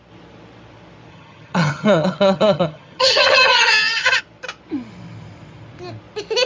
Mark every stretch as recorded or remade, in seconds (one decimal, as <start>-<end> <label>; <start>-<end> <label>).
0.0-1.1 recorded; 1.1-4.2 remade; 4.2-6.5 recorded

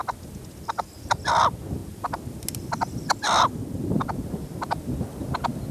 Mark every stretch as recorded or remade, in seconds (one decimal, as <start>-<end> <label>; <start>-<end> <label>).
0.0-5.7 recorded

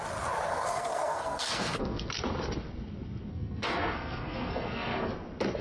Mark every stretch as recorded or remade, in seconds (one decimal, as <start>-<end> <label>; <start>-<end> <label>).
0.0-0.5 recorded; 0.5-2.1 remade; 2.1-3.3 recorded; 3.3-5.1 remade; 5.1-5.6 recorded

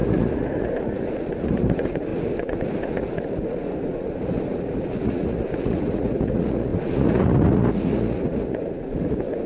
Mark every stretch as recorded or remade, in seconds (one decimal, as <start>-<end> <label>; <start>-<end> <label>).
0.0-9.5 remade

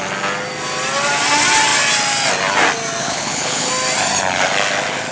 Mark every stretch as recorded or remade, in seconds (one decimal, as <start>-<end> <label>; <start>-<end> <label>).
0.0-3.0 recorded; 3.0-3.7 remade; 3.7-5.1 recorded

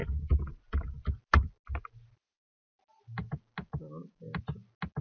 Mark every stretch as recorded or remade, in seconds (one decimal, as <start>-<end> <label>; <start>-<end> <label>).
0.0-5.0 recorded

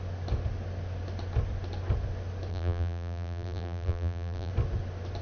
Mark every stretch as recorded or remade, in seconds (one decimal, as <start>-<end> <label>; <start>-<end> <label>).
0.0-2.5 recorded; 2.5-4.5 remade; 4.5-5.2 recorded